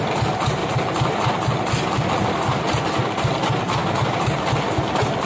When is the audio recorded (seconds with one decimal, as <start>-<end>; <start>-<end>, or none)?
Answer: 0.0-0.6; 1.3-5.3